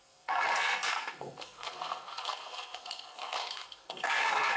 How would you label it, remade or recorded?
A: remade